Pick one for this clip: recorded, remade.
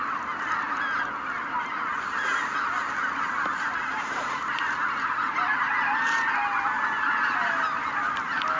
recorded